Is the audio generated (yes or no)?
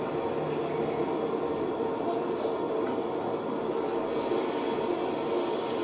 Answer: no